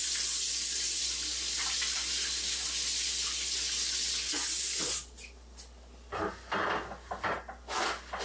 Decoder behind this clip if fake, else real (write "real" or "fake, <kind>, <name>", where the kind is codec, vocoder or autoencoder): real